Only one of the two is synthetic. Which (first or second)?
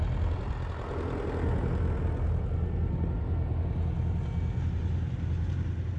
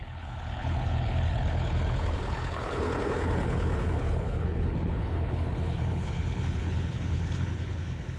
second